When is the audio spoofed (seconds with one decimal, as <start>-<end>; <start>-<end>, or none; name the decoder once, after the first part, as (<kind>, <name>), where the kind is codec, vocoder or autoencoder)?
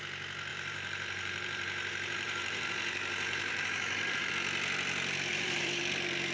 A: 0.5-4.3 (vocoder, BigVGAN v2); 5.3-5.8